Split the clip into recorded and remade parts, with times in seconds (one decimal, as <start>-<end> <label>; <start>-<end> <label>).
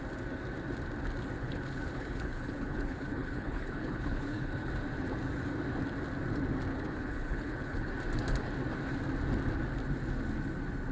0.0-1.4 recorded; 1.4-4.7 remade; 4.7-6.7 recorded; 6.7-7.9 remade; 7.9-10.9 recorded